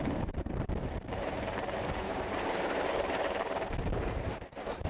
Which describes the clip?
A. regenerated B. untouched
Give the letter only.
A